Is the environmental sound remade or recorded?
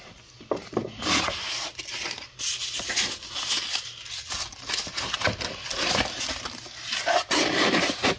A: recorded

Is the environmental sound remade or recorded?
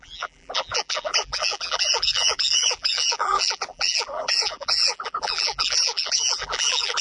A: remade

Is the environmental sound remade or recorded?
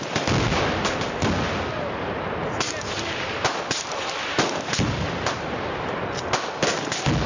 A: recorded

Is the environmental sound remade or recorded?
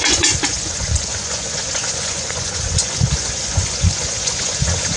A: remade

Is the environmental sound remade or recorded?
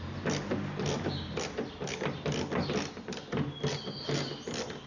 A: recorded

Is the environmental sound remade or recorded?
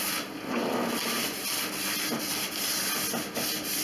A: recorded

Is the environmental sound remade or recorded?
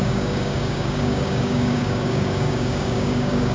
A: remade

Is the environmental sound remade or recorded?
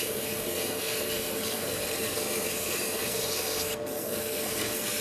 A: remade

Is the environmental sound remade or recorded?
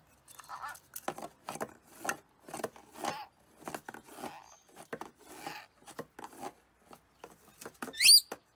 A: recorded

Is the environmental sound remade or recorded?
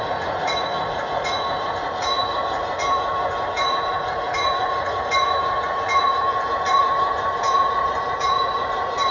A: remade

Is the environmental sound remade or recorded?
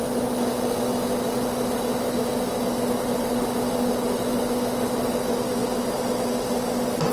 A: recorded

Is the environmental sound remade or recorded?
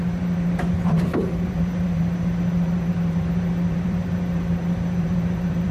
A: remade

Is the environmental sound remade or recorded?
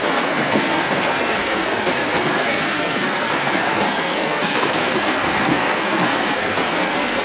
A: remade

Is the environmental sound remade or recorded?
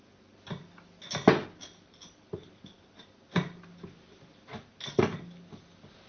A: recorded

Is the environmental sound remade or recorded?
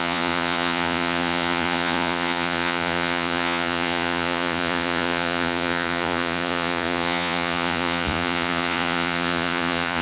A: remade